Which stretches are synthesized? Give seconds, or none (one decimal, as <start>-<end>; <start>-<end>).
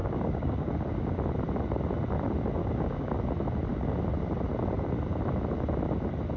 0.0-0.7; 2.6-3.1